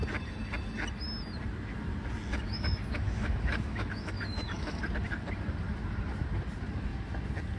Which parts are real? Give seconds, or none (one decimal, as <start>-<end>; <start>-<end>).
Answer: 0.0-2.3; 4.8-7.6